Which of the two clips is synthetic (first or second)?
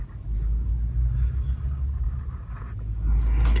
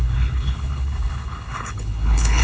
second